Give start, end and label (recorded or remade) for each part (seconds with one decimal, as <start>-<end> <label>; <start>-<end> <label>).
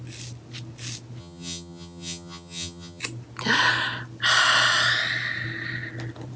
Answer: 0.0-1.2 recorded; 1.2-3.0 remade; 3.0-6.4 recorded